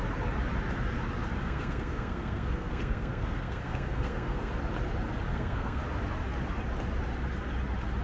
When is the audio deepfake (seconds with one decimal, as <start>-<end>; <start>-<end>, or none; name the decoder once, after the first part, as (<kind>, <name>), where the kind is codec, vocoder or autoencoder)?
1.4-4.5 (codec, SNAC); 5.3-5.8

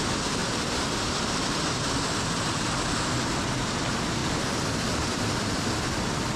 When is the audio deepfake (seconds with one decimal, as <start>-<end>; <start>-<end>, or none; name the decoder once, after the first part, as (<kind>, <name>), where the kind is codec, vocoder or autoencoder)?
0.4-2.7 (vocoder, BigVGAN v2); 4.2-5.6

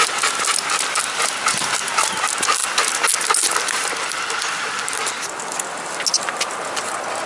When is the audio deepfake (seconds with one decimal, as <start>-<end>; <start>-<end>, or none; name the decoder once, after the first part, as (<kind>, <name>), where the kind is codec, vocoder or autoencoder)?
2.6-3.9 (vocoder, BigVGAN v2); 6.1-7.3

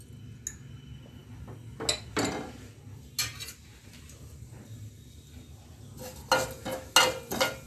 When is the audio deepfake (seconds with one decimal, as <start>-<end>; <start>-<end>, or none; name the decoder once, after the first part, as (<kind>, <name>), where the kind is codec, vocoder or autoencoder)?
3.7-4.8 (vocoder, BigVGAN v2)